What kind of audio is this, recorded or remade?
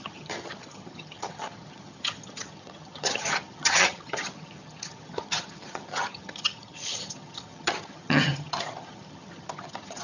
remade